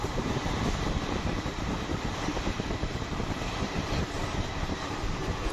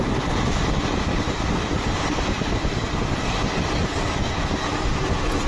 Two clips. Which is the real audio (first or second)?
second